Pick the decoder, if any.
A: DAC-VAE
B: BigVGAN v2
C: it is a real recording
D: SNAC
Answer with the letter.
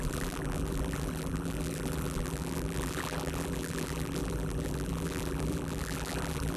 B